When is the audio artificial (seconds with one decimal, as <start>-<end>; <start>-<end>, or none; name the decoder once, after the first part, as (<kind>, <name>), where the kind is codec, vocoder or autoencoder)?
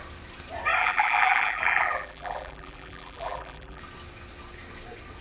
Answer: 0.8-3.8 (vocoder, BigVGAN v2)